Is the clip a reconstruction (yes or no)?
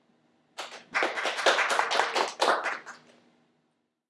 no